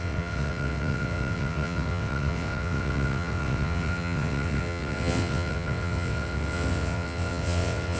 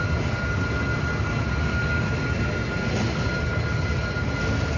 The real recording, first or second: second